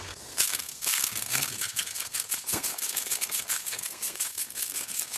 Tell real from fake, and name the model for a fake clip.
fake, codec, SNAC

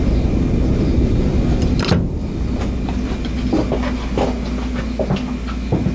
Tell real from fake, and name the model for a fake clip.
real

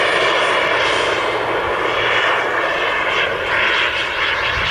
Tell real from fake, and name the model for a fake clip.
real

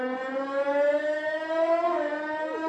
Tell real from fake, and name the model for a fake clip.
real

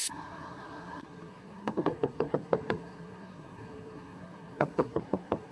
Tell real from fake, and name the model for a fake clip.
fake, codec, SNAC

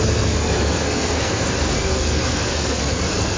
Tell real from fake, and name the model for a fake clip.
fake, codec, SNAC